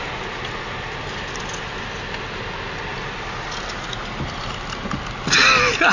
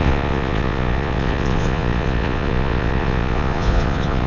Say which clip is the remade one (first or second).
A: second